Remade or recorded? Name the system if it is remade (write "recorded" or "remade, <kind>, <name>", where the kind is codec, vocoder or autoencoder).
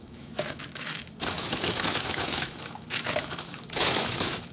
remade, autoencoder, DAC-VAE